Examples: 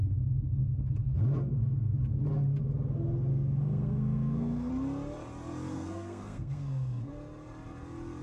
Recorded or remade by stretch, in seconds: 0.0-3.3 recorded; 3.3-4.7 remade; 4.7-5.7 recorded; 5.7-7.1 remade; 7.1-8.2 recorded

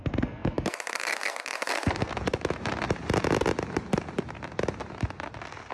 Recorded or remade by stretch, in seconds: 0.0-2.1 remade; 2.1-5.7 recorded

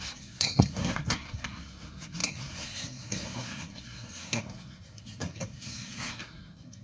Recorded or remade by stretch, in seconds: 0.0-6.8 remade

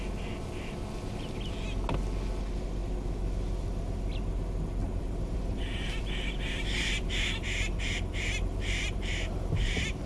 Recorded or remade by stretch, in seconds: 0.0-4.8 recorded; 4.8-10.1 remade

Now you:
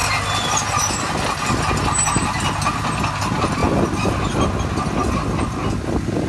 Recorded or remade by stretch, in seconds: 0.0-6.3 recorded